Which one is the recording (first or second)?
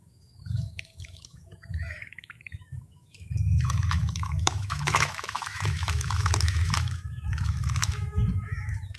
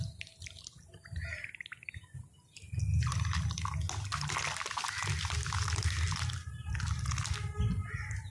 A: second